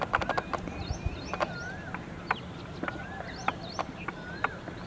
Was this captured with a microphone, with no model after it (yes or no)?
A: yes